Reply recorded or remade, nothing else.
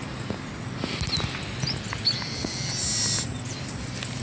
recorded